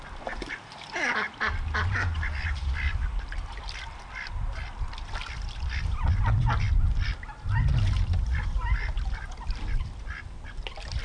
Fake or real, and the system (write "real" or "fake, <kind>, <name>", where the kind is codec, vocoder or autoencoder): real